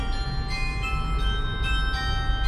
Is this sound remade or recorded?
recorded